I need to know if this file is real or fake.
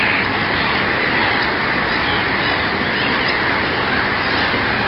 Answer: real